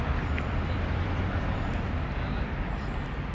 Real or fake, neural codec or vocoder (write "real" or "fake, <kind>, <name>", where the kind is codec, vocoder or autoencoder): fake, vocoder, BigVGAN v2